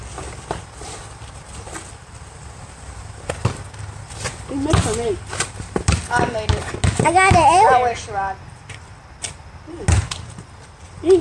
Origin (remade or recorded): recorded